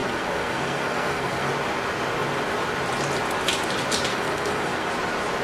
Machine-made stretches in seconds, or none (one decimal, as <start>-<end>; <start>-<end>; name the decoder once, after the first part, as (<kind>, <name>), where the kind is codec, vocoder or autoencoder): 0.0-1.5 (codec, SNAC); 4.1-4.9